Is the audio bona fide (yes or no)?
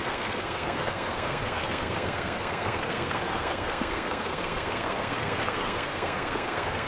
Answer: no